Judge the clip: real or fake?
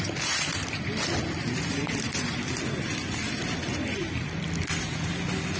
real